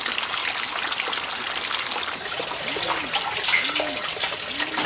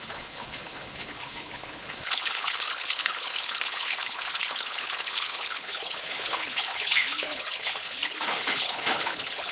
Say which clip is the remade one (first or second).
second